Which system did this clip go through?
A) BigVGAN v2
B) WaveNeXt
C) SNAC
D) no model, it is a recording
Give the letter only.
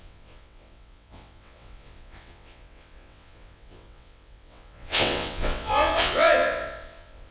B